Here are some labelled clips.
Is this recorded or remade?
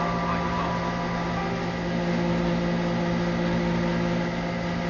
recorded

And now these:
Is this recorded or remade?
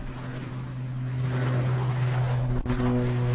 recorded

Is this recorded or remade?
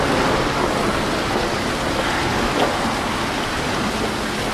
recorded